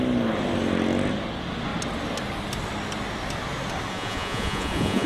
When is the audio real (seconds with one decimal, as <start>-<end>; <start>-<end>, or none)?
0.0-3.9